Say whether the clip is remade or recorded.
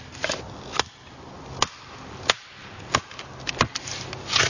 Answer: recorded